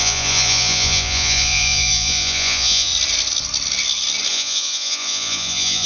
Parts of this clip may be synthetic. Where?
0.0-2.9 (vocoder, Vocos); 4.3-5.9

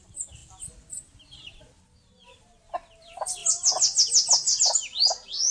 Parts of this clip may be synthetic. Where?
none

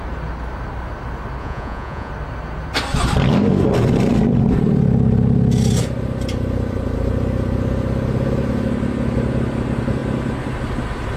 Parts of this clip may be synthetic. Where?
1.4-2.1 (vocoder, Vocos)

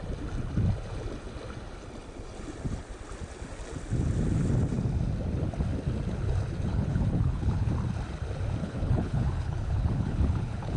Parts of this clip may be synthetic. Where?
6.7-7.7 (codec, HILCodec); 8.6-10.8

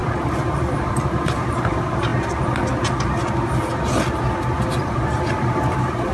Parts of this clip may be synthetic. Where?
0.0-2.1 (vocoder, BigVGAN v2); 4.7-6.1

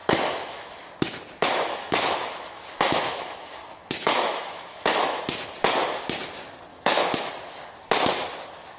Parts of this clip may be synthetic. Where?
0.0-0.8 (autoencoder, DAC-VAE); 1.4-5.2; 6.7-7.3

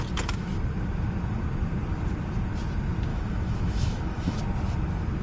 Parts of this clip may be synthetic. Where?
3.1-4.4 (autoencoder, DAC-VAE)

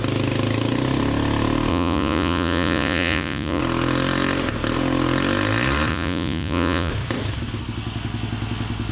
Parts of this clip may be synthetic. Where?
1.7-3.6 (vocoder, Vocos); 5.9-6.9